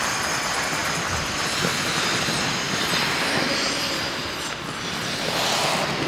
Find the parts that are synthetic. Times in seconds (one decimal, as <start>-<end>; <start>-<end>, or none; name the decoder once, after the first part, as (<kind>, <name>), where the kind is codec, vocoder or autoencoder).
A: none